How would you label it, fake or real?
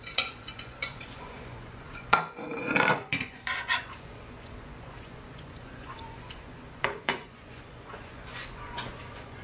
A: fake